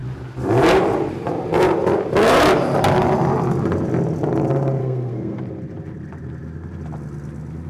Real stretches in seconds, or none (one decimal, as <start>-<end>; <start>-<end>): 0.0-4.8; 5.4-7.7